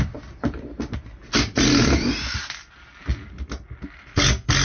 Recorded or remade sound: recorded